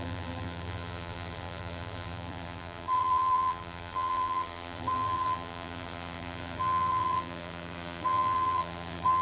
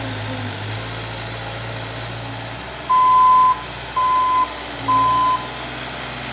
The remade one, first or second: first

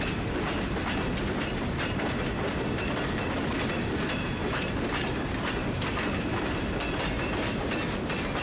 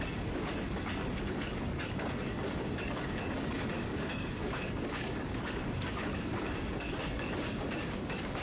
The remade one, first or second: second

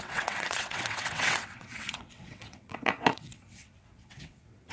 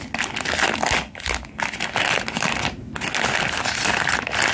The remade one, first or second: first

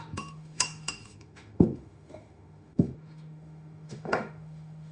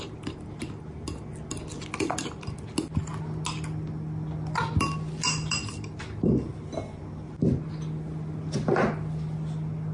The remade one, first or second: first